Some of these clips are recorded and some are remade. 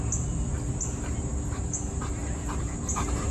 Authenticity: recorded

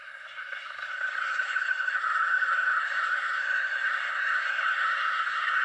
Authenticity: remade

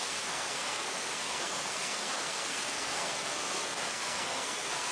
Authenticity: remade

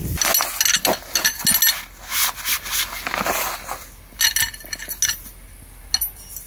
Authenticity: recorded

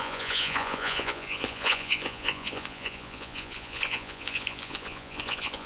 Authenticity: remade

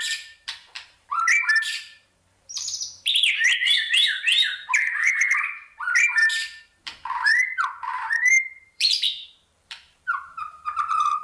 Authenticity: remade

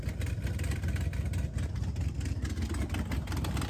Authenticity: recorded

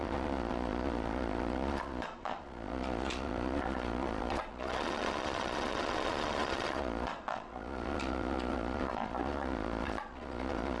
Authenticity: remade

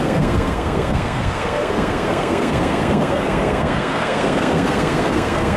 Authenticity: remade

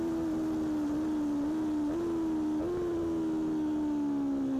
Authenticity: recorded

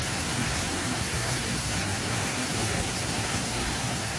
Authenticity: remade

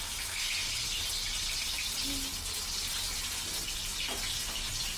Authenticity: recorded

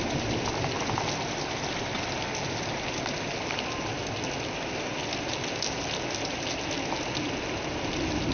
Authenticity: recorded